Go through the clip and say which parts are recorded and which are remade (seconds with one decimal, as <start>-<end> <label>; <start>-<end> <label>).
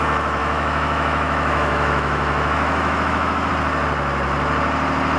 0.0-0.4 recorded; 0.4-3.5 remade; 3.5-5.2 recorded